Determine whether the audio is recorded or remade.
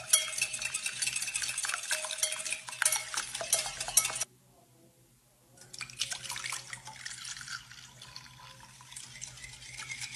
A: recorded